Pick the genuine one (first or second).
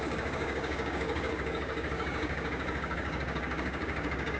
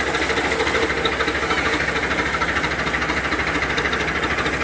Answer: second